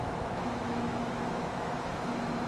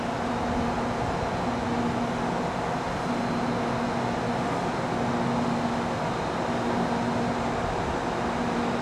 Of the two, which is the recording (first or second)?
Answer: second